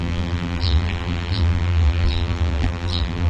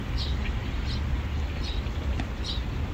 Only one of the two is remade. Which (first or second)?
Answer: first